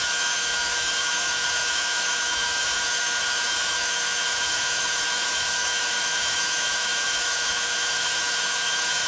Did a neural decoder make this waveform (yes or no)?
yes